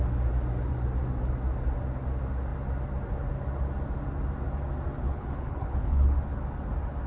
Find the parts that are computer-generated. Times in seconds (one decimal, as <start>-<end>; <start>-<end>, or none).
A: 5.0-6.2